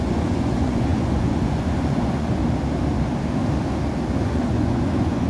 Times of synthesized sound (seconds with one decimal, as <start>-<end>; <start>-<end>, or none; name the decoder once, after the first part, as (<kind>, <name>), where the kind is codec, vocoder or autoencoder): 0.0-2.4 (vocoder, Vocos); 4.2-5.3